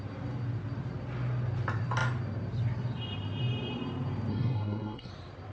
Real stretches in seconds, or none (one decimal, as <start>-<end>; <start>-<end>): 0.0-4.3; 5.1-5.5